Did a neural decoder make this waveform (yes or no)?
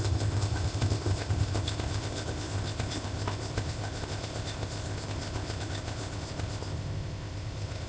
yes